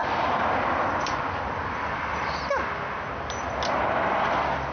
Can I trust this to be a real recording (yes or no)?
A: yes